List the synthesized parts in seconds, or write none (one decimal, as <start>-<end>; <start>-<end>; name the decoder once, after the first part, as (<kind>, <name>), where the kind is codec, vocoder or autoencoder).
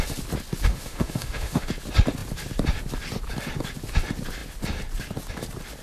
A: 0.7-1.7 (autoencoder, DAC-VAE)